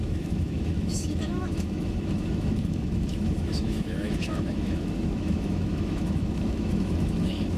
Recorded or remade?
remade